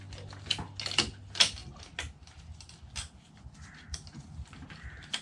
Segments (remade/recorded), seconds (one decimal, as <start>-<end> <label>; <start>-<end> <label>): 0.0-5.2 recorded

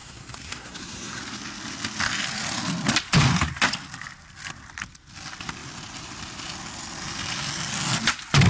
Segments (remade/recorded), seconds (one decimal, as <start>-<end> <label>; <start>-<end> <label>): 0.0-1.2 remade; 1.2-8.5 recorded

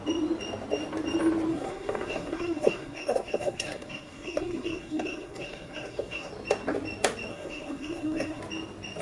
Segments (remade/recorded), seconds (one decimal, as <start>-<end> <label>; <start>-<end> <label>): 0.0-1.5 recorded; 1.5-6.3 remade; 6.3-7.3 recorded; 7.3-8.4 remade; 8.4-9.0 recorded

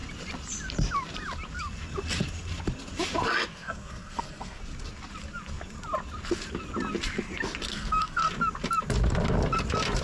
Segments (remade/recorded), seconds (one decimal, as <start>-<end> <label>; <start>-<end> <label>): 0.0-3.5 recorded; 3.5-4.6 remade; 4.6-7.7 recorded; 7.7-8.3 remade; 8.3-10.0 recorded